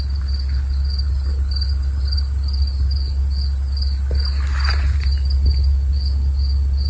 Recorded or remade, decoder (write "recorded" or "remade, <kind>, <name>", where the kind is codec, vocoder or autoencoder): recorded